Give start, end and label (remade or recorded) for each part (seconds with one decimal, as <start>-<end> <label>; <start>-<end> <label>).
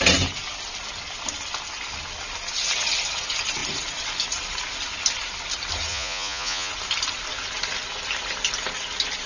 0.0-5.9 recorded; 5.9-6.7 remade; 6.7-9.3 recorded